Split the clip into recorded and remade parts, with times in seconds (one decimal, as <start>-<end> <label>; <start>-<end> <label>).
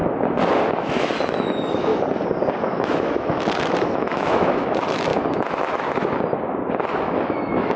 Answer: 0.0-0.7 recorded; 0.7-1.9 remade; 1.9-2.6 recorded; 2.6-5.1 remade; 5.1-7.0 recorded; 7.0-7.8 remade